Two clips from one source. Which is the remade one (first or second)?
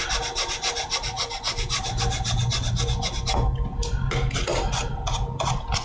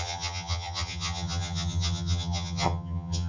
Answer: second